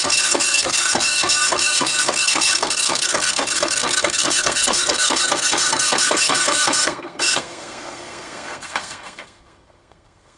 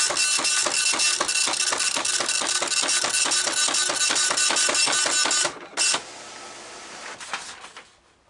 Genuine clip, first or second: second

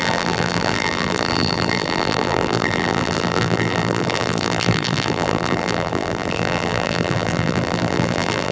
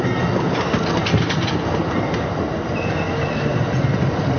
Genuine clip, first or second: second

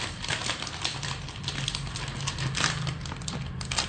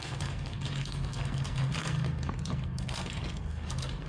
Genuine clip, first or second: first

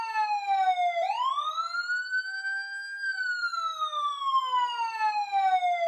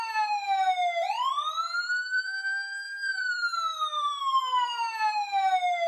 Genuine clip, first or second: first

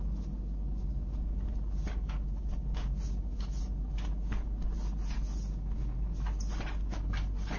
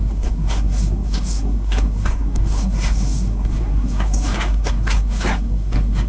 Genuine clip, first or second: first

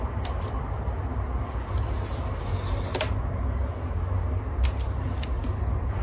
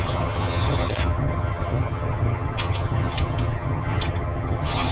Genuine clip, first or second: first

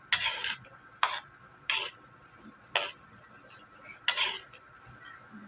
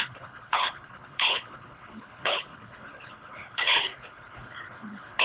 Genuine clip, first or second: first